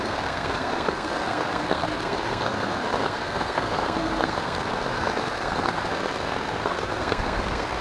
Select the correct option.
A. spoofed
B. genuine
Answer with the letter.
A